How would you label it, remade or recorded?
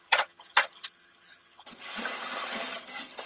remade